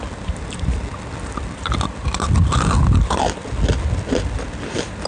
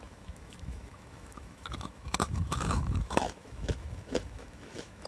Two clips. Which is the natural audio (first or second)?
first